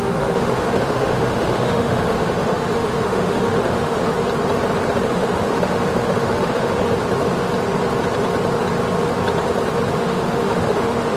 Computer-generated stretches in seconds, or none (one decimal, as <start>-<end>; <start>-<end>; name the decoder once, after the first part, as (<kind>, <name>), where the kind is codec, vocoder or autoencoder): 0.0-4.1 (autoencoder, DAC-VAE); 5.1-6.8; 10.0-11.2